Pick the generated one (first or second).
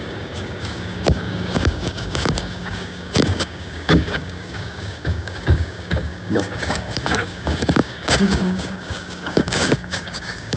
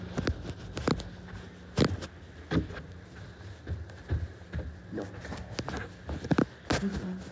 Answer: first